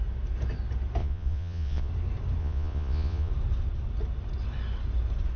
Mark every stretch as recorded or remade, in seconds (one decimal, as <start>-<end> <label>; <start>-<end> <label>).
0.0-1.0 recorded; 1.0-1.9 remade; 1.9-2.4 recorded; 2.4-3.3 remade; 3.3-5.4 recorded